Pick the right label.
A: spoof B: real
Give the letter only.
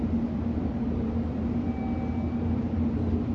B